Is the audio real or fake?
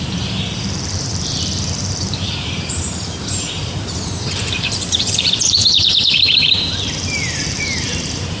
fake